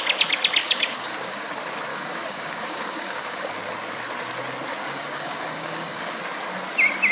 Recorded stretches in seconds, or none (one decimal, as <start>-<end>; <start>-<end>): 0.0-0.6; 1.5-1.9; 3.5-4.8; 6.2-7.1